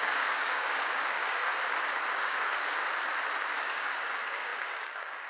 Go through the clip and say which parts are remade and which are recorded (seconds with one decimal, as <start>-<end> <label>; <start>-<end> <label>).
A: 0.0-1.5 remade; 1.5-2.1 recorded; 2.1-2.8 remade; 2.8-3.6 recorded; 3.6-5.3 remade